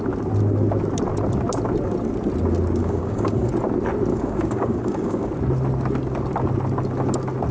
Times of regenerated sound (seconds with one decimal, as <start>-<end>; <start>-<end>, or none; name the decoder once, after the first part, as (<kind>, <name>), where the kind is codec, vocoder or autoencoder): 2.8-3.5 (codec, DAC); 4.1-5.3